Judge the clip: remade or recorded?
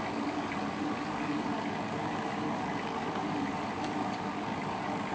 remade